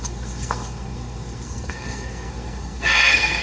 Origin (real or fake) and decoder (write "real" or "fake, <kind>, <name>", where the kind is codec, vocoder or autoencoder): fake, codec, SNAC